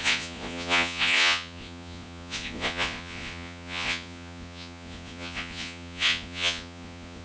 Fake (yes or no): yes